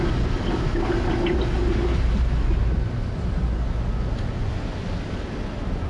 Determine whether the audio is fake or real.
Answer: real